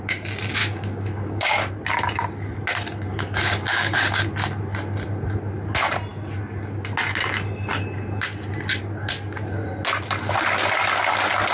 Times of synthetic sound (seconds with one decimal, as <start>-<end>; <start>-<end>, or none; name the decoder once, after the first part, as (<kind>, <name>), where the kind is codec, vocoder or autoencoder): 0.6-1.7 (codec, DAC); 3.1-4.2